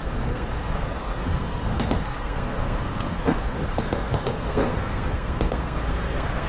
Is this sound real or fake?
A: fake